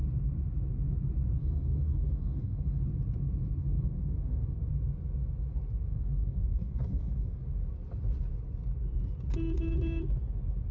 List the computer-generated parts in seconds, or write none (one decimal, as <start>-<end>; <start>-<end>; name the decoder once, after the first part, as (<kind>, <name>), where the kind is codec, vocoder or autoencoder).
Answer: 1.4-2.8 (codec, DAC); 3.6-4.7; 5.9-7.4